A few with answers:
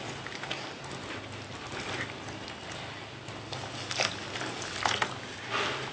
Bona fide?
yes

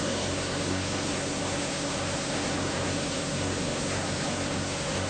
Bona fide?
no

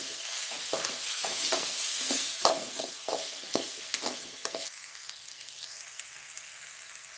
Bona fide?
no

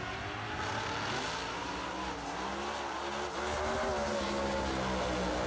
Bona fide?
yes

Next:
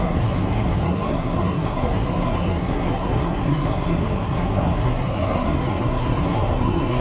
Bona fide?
no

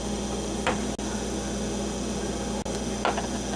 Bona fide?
yes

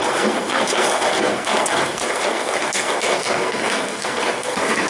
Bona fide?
no